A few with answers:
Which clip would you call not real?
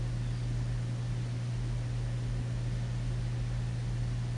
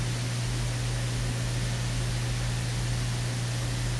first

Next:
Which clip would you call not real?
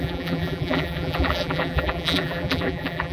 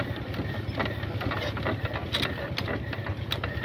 first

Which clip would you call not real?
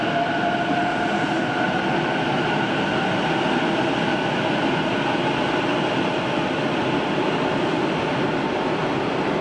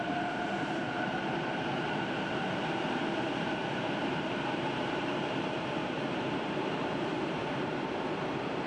second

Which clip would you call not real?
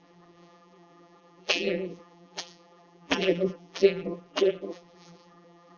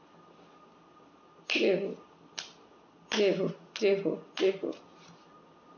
first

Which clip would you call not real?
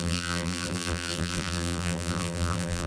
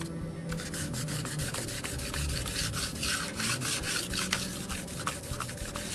first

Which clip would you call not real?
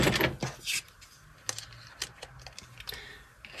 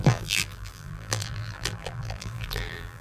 second